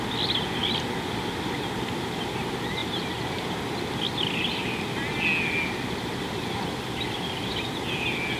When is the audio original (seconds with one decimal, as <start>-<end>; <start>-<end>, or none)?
0.0-2.8; 3.4-8.4